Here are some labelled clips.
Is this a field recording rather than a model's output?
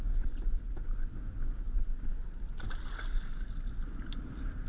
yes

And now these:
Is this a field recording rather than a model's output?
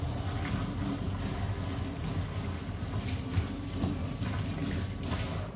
yes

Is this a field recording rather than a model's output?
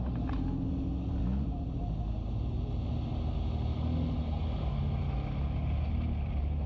yes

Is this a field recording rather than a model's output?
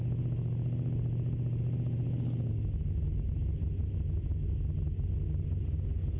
yes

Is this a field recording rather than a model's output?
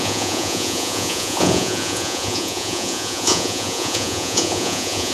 no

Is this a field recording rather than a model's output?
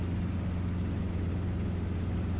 yes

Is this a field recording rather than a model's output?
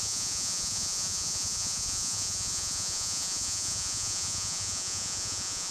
no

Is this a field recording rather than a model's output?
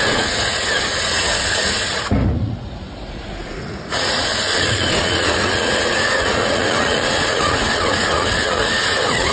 no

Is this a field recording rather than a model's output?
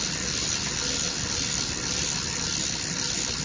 yes